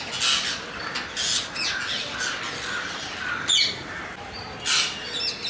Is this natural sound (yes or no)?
yes